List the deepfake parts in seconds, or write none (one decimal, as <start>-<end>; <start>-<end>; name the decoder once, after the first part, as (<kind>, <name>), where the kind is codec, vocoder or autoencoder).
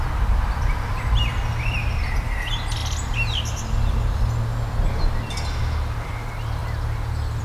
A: none